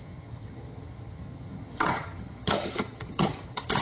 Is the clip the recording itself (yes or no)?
no